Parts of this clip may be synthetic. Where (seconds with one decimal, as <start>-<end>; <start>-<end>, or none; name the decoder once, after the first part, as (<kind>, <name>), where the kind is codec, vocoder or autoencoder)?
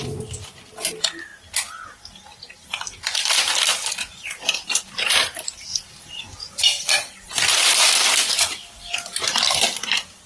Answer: 0.0-1.3 (vocoder, BigVGAN v2); 3.0-10.3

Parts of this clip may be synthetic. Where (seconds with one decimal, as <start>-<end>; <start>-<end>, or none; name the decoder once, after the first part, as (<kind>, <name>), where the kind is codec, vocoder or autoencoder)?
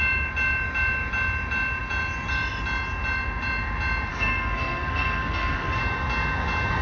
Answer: 4.1-5.8 (codec, SNAC)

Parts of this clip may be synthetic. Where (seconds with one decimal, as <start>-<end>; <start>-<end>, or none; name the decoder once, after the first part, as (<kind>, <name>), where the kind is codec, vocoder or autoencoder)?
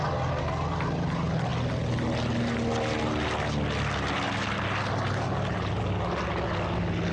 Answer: none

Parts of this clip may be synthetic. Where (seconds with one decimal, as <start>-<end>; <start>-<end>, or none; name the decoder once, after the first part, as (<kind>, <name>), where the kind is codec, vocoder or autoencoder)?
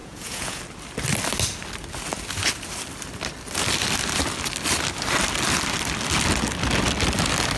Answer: 0.0-0.6 (vocoder, Vocos)